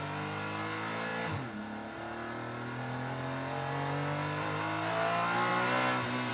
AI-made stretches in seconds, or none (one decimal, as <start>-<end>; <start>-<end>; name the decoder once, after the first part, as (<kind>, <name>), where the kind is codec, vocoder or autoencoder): none